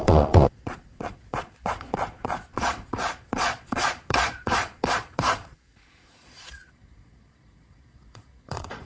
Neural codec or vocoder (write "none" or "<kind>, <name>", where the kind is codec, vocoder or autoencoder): vocoder, Vocos